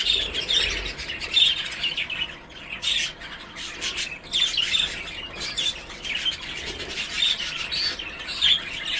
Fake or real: real